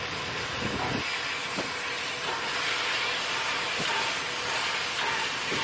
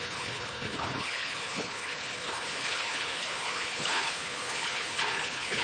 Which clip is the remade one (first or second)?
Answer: second